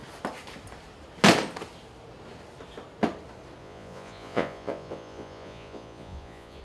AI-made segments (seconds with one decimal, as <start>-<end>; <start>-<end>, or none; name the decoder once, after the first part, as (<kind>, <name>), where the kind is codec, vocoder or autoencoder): 3.6-6.6 (vocoder, Vocos)